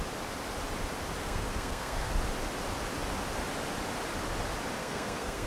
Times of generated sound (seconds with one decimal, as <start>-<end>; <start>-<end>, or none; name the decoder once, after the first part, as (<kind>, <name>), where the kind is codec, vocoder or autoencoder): 1.2-2.1 (codec, SNAC); 4.8-5.5